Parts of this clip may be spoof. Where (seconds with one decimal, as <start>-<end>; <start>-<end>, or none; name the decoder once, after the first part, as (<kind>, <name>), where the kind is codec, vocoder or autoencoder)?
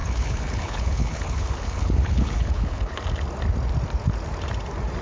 0.0-3.0 (codec, HILCodec)